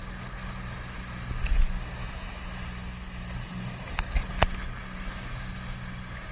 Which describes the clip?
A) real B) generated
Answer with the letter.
A